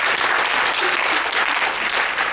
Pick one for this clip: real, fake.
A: fake